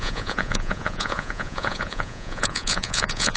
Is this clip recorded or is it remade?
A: remade